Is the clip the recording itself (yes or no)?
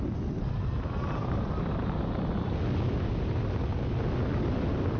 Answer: yes